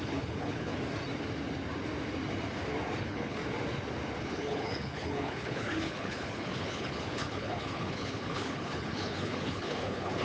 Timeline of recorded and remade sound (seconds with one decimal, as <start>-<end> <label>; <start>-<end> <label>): 0.0-0.7 remade; 0.7-3.0 recorded; 3.0-3.4 remade; 3.4-4.2 recorded; 4.2-10.2 remade